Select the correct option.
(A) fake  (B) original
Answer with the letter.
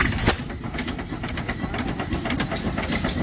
B